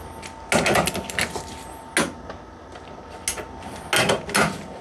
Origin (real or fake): real